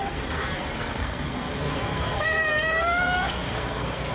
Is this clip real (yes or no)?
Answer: no